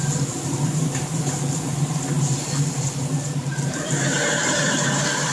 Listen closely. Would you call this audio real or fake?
real